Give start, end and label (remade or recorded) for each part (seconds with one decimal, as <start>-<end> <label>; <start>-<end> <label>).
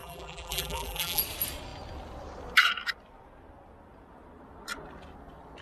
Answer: 0.0-1.2 remade; 1.2-5.6 recorded